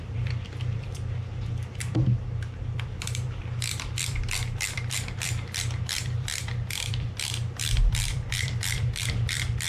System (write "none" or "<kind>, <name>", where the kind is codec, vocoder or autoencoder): vocoder, BigVGAN v2